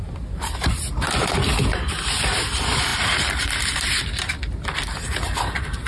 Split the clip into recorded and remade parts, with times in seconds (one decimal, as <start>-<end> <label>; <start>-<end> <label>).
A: 0.0-2.9 remade; 2.9-3.6 recorded; 3.6-5.9 remade